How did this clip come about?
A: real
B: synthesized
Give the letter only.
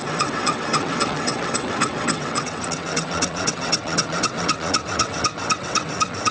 B